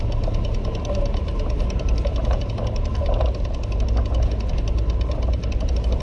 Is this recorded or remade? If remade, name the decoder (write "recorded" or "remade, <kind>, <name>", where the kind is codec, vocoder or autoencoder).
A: recorded